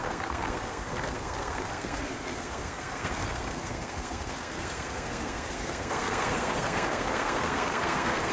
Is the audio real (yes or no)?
no